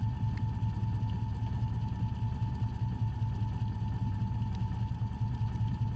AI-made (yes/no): no